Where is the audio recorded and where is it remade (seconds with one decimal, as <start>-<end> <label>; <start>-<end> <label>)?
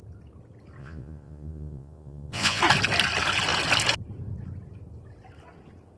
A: 0.0-0.8 recorded; 0.8-2.6 remade; 2.6-6.0 recorded